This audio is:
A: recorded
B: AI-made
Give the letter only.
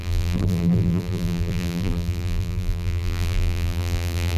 B